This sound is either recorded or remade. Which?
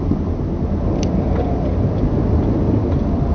recorded